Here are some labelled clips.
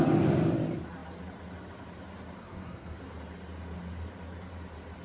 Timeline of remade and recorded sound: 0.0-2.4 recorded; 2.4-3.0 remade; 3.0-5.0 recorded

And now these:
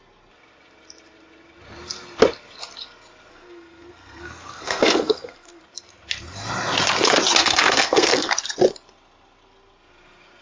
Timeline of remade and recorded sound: 0.0-3.3 recorded; 3.3-5.6 remade; 5.6-7.4 recorded; 7.4-8.3 remade; 8.3-10.4 recorded

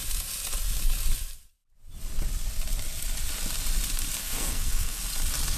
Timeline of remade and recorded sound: 0.0-4.2 recorded; 4.2-5.0 remade; 5.0-5.6 recorded